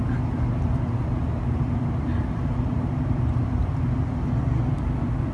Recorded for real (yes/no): yes